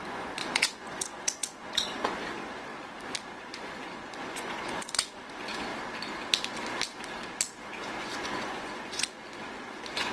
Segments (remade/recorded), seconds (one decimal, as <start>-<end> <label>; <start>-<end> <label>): 0.0-2.7 remade; 2.7-3.4 recorded; 3.4-5.7 remade; 5.7-7.8 recorded; 7.8-10.1 remade